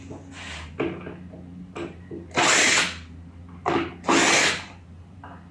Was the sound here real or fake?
real